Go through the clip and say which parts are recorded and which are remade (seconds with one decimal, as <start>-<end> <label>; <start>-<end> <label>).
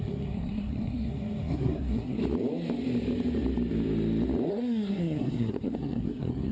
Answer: 0.0-2.2 remade; 2.2-4.5 recorded; 4.5-6.5 remade